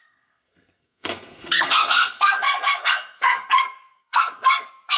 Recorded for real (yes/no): no